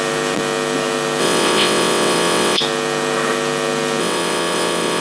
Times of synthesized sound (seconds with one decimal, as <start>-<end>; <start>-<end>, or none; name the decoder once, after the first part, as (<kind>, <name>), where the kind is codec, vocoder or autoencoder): 1.2-2.6 (vocoder, WaveNeXt); 4.0-5.0